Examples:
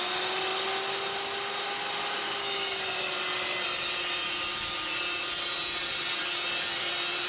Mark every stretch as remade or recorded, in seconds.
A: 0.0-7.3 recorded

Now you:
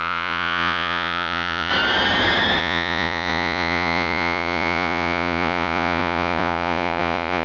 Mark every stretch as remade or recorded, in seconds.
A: 0.0-1.7 remade; 1.7-2.6 recorded; 2.6-7.4 remade

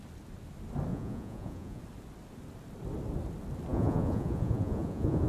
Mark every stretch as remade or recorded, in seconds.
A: 0.0-0.9 recorded; 0.9-1.8 remade; 1.8-3.7 recorded; 3.7-5.3 remade

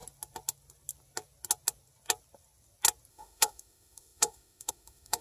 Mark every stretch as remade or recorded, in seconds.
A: 0.0-3.1 recorded; 3.1-5.2 remade

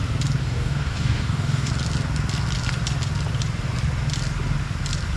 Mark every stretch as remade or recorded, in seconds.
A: 0.0-0.4 recorded; 0.4-1.7 remade; 1.7-5.2 recorded

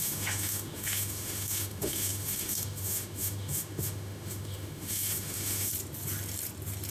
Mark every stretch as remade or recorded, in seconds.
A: 0.0-5.7 remade; 5.7-6.9 recorded

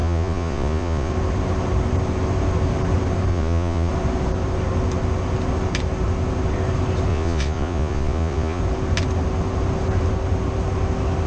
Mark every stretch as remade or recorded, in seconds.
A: 0.0-1.1 remade; 1.1-3.3 recorded; 3.3-3.9 remade; 3.9-7.1 recorded; 7.1-8.6 remade; 8.6-11.3 recorded

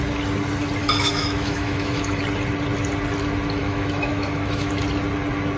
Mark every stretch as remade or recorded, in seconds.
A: 0.0-0.8 recorded; 0.8-2.2 remade; 2.2-3.6 recorded; 3.6-4.7 remade; 4.7-5.6 recorded